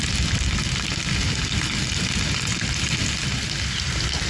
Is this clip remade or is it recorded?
recorded